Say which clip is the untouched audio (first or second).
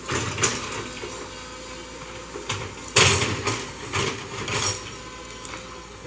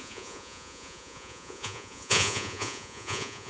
first